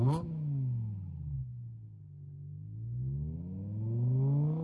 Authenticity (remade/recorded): recorded